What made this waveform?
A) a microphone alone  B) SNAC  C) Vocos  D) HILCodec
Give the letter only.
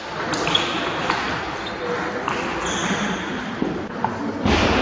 A